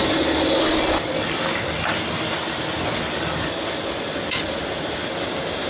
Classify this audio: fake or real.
real